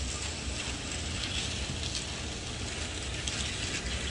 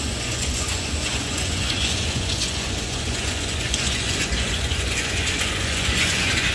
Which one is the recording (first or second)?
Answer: first